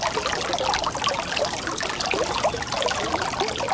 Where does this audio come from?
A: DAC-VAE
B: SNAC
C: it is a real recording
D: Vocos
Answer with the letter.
C